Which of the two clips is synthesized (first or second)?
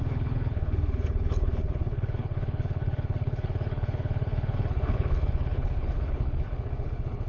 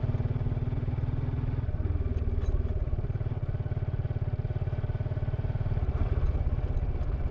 first